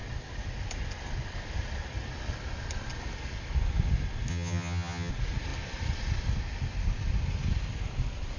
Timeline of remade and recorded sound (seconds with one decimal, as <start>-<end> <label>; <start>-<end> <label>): 0.0-4.3 recorded; 4.3-5.1 remade; 5.1-8.4 recorded